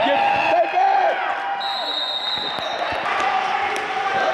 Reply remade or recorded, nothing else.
recorded